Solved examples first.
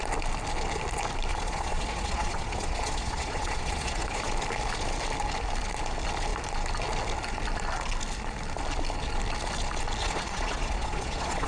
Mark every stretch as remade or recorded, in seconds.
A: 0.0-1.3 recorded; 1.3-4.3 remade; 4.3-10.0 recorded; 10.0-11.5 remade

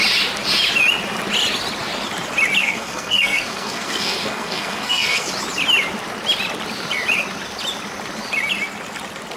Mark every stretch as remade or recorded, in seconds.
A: 0.0-2.6 recorded; 2.6-5.3 remade; 5.3-9.4 recorded